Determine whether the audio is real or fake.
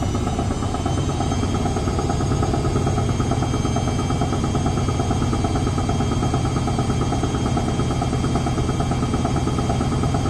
real